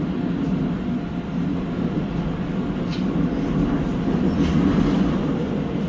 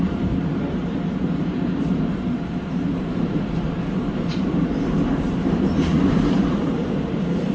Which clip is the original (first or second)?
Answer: first